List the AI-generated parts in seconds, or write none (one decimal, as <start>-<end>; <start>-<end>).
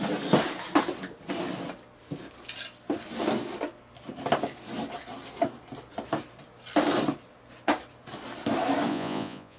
8.9-9.6